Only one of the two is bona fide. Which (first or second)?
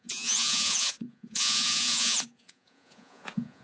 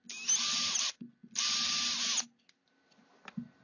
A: second